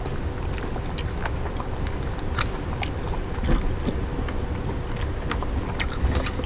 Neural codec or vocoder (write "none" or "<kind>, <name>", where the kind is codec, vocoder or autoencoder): none